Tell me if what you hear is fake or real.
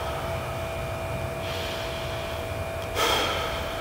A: real